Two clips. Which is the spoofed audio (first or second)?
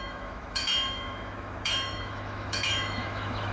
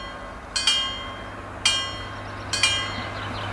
first